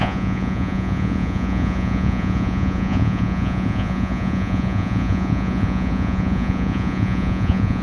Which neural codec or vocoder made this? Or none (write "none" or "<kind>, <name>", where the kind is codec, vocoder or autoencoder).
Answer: vocoder, Vocos